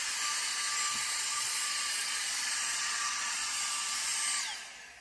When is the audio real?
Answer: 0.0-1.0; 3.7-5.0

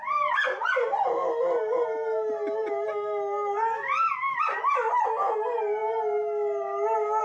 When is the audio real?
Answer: 0.0-7.2

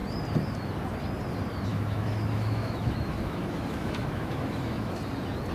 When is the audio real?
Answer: 0.0-1.7; 5.0-5.5

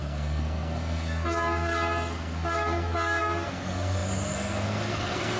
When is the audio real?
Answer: none

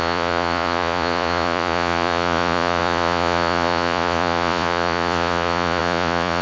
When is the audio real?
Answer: none

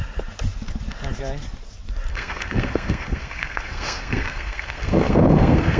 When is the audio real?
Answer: 0.0-2.1

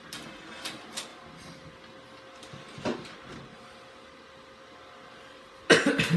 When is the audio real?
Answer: 0.0-6.2

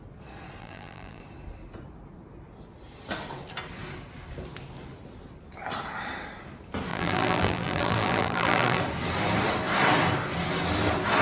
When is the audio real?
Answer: 0.0-0.6; 1.2-6.9; 8.8-11.2